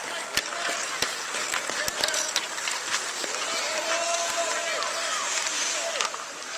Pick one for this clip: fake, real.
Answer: real